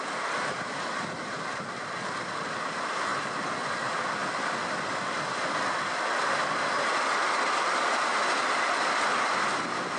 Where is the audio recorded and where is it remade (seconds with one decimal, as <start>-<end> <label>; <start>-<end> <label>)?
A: 0.0-3.1 remade; 3.1-3.6 recorded; 3.6-4.2 remade; 4.2-7.5 recorded; 7.5-10.0 remade